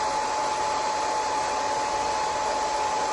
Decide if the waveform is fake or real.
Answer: real